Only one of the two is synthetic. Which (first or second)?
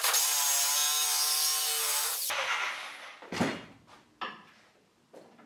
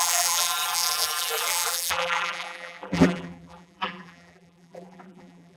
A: second